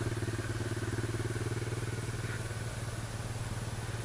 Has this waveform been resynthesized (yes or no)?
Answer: no